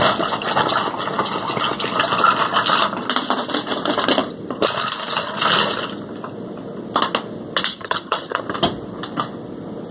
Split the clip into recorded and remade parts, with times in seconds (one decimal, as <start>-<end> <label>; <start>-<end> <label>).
0.0-7.7 recorded; 7.7-8.4 remade; 8.4-9.9 recorded